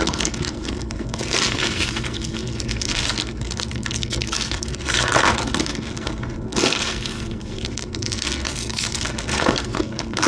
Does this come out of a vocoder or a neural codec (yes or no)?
yes